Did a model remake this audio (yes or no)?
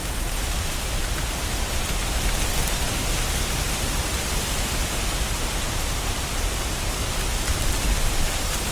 no